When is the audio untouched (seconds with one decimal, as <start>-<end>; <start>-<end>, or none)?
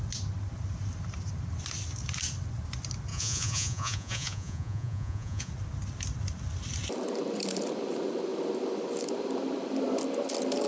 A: 0.0-3.1; 5.5-10.7